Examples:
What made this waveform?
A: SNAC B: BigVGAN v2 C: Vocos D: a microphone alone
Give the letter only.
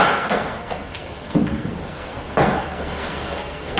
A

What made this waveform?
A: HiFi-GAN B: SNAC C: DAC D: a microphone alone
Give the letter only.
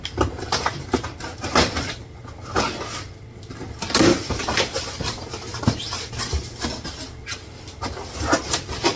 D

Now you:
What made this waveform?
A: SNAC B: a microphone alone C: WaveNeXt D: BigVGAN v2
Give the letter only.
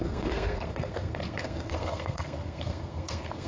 A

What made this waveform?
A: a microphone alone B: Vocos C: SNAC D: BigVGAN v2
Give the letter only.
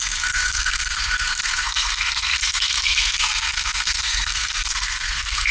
C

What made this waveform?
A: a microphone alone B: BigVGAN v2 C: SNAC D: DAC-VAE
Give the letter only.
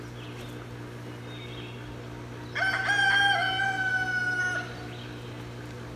A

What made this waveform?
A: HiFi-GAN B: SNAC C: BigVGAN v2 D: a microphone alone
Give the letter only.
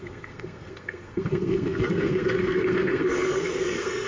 B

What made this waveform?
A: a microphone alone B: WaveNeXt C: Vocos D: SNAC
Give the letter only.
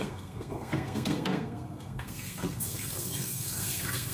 D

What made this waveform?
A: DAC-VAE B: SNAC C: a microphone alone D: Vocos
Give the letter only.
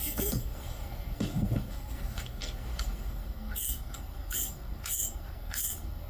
B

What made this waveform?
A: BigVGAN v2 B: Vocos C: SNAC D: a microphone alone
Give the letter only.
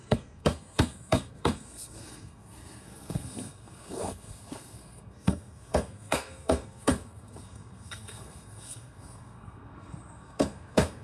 C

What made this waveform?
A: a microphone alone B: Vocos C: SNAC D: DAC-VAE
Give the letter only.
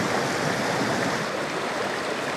A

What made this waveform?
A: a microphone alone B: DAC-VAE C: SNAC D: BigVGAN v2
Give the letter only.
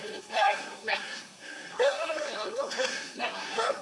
C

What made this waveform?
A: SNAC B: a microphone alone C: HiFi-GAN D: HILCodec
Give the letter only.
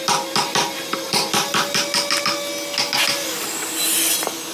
B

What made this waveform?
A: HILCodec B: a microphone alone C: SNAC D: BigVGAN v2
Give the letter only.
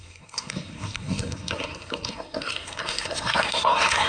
C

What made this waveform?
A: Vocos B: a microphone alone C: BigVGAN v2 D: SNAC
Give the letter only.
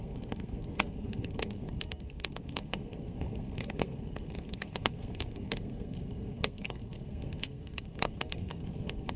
D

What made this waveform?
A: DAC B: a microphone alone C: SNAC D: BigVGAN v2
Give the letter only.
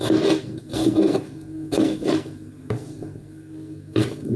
C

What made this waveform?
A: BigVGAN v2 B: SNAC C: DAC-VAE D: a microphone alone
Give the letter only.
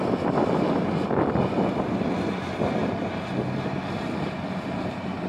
D